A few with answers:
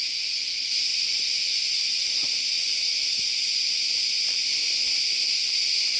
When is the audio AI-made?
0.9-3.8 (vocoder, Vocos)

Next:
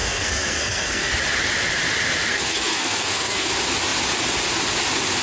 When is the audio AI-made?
0.0-1.1 (codec, SNAC); 2.3-3.5